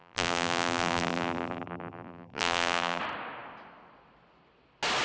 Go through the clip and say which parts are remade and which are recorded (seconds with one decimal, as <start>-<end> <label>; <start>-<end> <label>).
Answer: 0.0-3.0 remade; 3.0-5.0 recorded